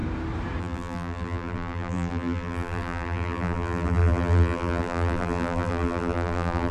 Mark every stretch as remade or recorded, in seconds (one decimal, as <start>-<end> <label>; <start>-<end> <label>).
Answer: 0.0-0.6 recorded; 0.6-6.7 remade